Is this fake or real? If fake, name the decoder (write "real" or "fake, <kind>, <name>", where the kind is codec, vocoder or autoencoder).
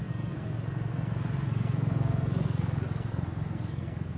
fake, codec, SNAC